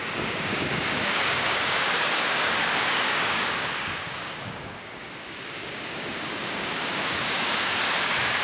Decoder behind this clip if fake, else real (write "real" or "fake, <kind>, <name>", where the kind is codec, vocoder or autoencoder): fake, codec, DAC